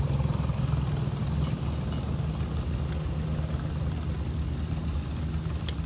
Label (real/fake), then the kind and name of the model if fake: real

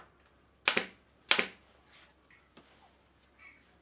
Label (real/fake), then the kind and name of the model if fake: real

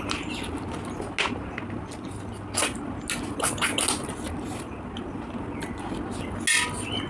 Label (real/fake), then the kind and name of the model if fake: real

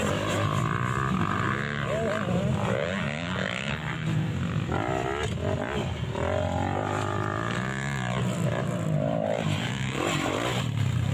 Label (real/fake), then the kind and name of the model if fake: real